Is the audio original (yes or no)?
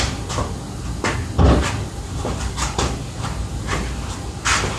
yes